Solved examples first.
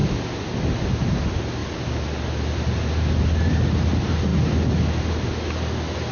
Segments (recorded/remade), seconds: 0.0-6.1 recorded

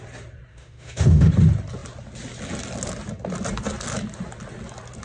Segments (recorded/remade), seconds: 0.0-0.5 recorded; 0.5-1.3 remade; 1.3-5.0 recorded

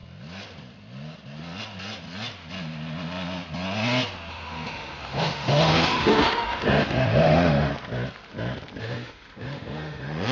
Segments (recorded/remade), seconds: 0.0-4.3 recorded; 4.3-7.7 remade; 7.7-8.8 recorded; 8.8-10.3 remade

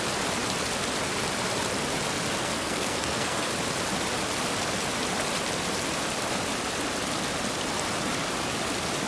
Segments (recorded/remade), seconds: 0.0-2.4 recorded; 2.4-3.5 remade; 3.5-9.1 recorded